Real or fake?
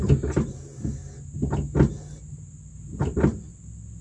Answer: real